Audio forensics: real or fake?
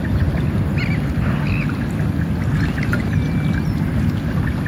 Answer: real